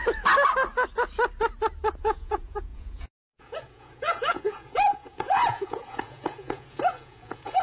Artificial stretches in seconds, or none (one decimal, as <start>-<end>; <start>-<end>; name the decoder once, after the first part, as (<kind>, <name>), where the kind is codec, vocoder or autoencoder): 2.0-7.6 (vocoder, Vocos)